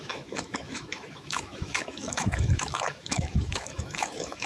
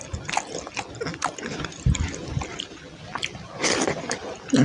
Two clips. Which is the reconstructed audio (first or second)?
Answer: first